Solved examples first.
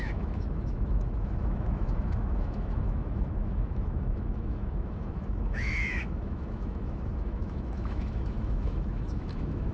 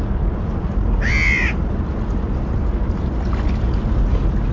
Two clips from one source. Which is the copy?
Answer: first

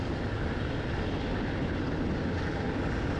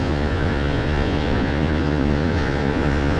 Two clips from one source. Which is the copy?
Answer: second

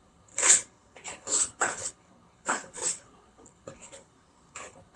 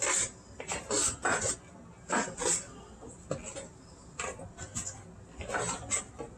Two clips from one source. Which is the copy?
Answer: first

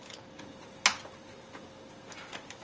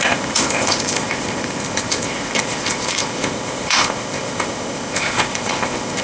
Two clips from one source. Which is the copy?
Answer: second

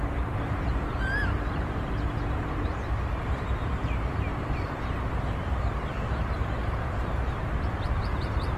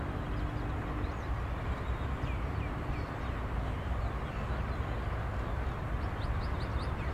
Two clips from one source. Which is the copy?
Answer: first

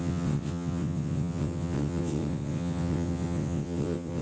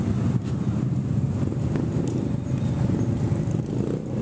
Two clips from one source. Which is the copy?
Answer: first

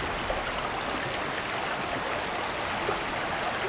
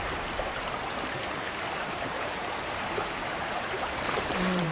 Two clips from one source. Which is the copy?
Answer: second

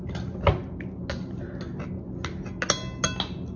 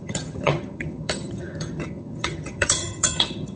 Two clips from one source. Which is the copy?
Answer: second